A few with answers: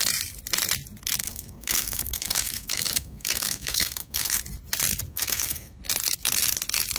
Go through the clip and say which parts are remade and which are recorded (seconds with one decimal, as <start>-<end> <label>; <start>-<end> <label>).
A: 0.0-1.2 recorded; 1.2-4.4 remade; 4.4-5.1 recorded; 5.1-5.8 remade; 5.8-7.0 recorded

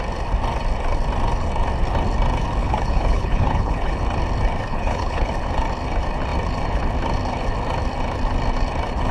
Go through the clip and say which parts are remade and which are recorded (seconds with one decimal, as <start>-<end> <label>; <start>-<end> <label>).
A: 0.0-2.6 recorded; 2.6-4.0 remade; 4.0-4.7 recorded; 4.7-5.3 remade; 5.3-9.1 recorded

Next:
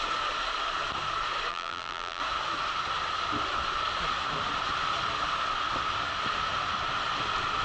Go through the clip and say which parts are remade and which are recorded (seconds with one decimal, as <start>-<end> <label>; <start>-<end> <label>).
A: 0.0-1.5 recorded; 1.5-2.2 remade; 2.2-7.6 recorded

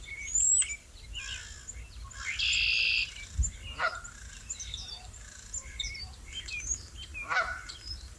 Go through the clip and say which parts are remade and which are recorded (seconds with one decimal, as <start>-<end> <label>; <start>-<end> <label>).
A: 0.0-0.5 remade; 0.5-3.1 recorded; 3.1-8.2 remade